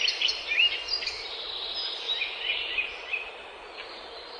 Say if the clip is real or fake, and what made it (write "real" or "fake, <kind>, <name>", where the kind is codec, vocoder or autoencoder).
fake, vocoder, BigVGAN v2